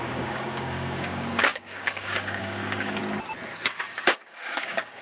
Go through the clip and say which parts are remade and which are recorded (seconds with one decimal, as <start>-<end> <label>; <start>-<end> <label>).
0.0-3.0 remade; 3.0-3.6 recorded; 3.6-5.0 remade